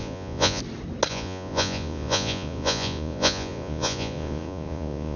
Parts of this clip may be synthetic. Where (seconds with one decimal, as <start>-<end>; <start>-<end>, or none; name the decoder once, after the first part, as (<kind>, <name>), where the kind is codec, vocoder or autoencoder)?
0.0-0.6 (vocoder, Vocos); 1.1-5.2